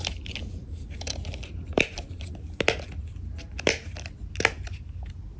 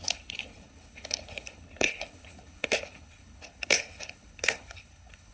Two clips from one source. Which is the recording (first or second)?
first